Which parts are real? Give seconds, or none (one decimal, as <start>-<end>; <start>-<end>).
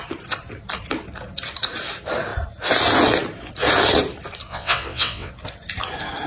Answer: 0.0-4.5; 5.3-6.3